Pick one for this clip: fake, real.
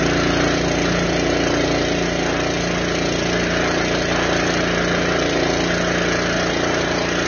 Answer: real